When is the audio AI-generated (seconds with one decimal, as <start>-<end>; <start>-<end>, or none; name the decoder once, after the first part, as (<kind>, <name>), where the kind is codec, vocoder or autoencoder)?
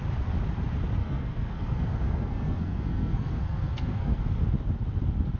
1.0-4.2 (codec, SNAC)